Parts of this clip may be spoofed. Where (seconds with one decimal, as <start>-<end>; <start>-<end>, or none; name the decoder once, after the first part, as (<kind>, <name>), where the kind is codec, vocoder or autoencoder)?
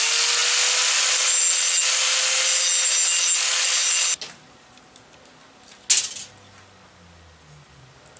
none